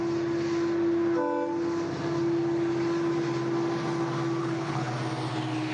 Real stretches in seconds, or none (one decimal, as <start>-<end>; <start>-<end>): 0.0-4.4; 4.9-5.7